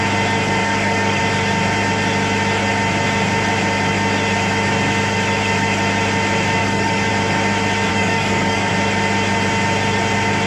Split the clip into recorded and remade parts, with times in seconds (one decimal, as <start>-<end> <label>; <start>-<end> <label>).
0.0-0.6 recorded; 0.6-1.2 remade; 1.2-6.6 recorded; 6.6-7.1 remade; 7.1-7.9 recorded; 7.9-8.7 remade; 8.7-10.5 recorded